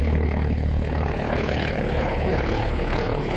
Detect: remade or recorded remade